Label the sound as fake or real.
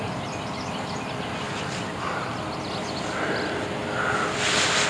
real